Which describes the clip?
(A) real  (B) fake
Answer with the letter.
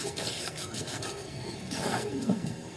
B